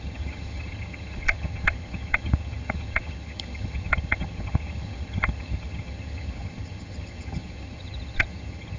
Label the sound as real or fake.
fake